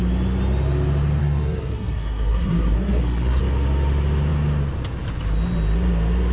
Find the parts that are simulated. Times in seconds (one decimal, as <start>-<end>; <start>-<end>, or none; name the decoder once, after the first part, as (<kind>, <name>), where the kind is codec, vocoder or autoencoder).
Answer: 1.2-3.4 (codec, SNAC)